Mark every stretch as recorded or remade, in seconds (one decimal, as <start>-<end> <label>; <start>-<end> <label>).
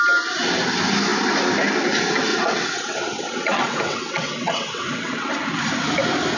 0.0-2.3 recorded; 2.3-5.3 remade; 5.3-6.4 recorded